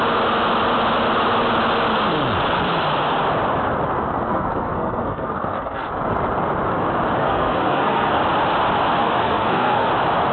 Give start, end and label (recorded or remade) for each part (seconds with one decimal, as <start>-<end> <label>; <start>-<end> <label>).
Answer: 0.0-4.3 recorded; 4.3-5.9 remade; 5.9-7.2 recorded; 7.2-8.2 remade; 8.2-9.0 recorded; 9.0-9.9 remade; 9.9-10.3 recorded